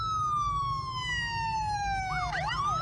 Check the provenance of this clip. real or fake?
real